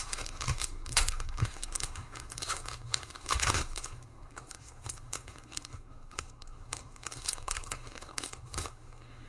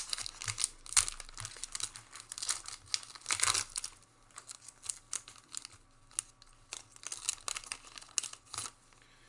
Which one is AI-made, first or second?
first